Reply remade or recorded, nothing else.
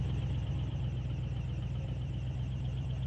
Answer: recorded